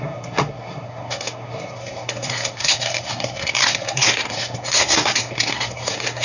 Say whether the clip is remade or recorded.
remade